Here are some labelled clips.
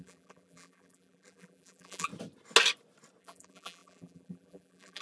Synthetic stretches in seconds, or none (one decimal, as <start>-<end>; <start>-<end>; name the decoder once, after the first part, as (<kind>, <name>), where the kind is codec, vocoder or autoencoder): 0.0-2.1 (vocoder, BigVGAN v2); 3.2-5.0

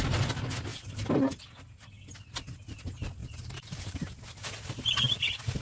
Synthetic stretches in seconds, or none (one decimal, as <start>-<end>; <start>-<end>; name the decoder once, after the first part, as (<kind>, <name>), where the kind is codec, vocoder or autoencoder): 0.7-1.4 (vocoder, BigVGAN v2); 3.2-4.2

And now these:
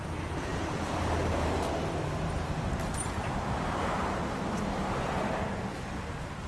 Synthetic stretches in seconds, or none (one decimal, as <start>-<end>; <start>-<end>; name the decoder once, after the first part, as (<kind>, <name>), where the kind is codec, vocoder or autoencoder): 0.5-4.4 (vocoder, BigVGAN v2)

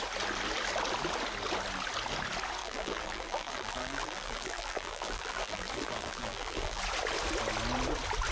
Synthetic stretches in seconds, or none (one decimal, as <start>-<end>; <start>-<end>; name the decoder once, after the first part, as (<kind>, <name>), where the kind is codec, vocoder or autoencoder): 2.6-6.8 (vocoder, BigVGAN v2)